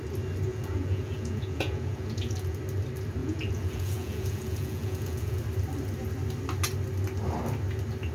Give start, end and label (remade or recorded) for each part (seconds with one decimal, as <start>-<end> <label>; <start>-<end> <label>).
0.0-0.5 recorded; 0.5-2.6 remade; 2.6-3.2 recorded; 3.2-5.4 remade; 5.4-8.1 recorded